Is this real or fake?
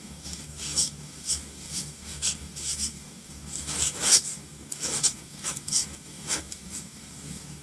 fake